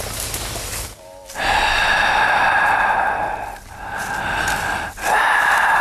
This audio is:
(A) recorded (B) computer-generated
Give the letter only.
A